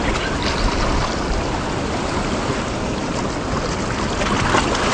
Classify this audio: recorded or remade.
recorded